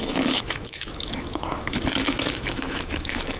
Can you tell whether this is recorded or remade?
remade